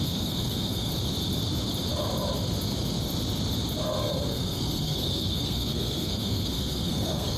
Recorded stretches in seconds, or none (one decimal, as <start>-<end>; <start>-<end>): 0.9-4.0